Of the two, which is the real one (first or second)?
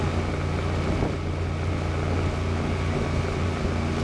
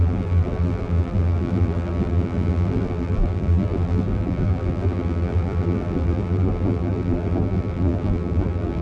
first